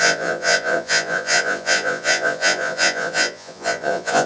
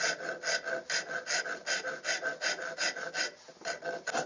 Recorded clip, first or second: second